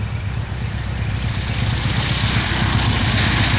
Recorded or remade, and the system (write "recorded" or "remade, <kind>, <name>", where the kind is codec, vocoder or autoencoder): recorded